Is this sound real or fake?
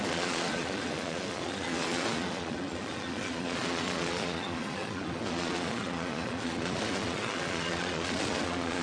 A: fake